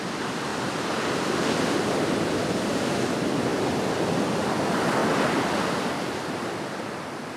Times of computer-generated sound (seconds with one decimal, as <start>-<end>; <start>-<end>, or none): none